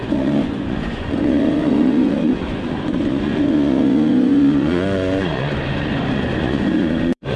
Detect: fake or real fake